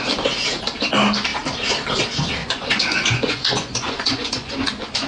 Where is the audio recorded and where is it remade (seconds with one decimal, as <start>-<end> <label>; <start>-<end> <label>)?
0.0-2.4 recorded; 2.4-4.5 remade; 4.5-5.1 recorded